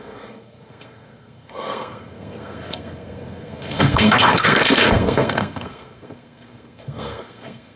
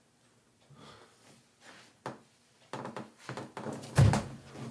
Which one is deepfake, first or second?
first